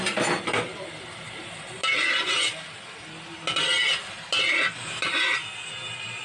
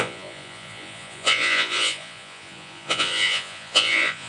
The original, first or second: first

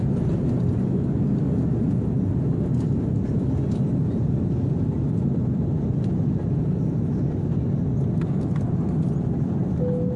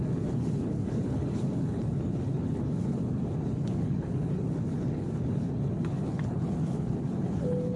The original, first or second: first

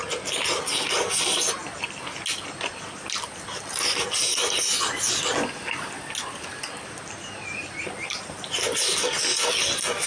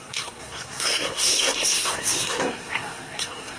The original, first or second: first